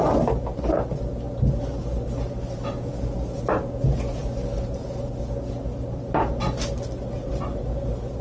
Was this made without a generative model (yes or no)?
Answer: yes